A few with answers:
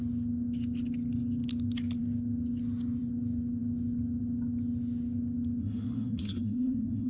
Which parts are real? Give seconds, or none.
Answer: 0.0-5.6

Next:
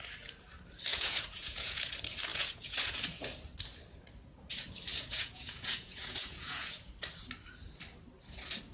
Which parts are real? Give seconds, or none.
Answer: 0.0-0.9; 1.9-2.3; 3.2-4.9; 6.9-8.7

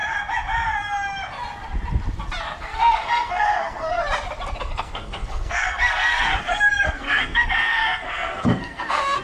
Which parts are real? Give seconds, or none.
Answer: 0.0-2.6; 4.0-4.6